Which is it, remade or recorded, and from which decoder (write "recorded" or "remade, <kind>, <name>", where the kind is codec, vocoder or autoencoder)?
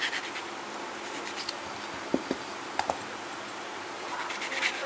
recorded